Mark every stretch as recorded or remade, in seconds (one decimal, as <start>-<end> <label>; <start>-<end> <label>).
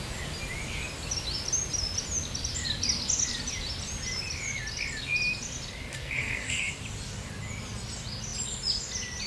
0.0-5.9 recorded; 5.9-6.7 remade; 6.7-9.3 recorded